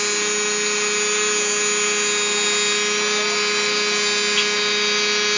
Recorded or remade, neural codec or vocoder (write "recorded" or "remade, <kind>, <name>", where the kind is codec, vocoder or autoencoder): recorded